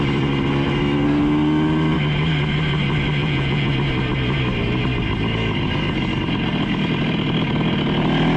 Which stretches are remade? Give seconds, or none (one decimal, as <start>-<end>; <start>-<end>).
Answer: 3.2-3.7